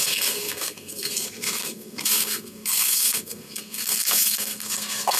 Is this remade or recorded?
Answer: remade